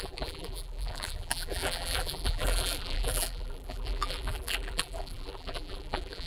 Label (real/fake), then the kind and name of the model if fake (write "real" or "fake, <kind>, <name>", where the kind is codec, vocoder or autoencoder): fake, vocoder, BigVGAN v2